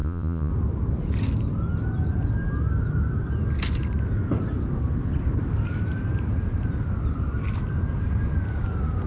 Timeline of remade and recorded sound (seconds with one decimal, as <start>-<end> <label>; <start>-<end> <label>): 0.0-0.5 remade; 0.5-9.1 recorded